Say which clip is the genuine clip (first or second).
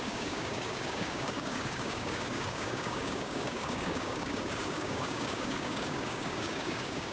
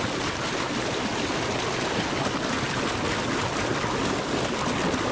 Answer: second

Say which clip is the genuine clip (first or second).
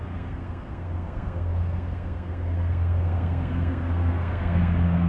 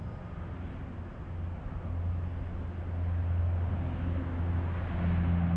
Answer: second